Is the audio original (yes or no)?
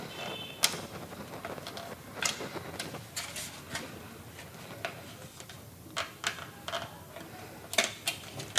yes